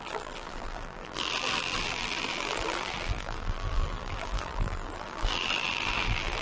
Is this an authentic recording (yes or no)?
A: no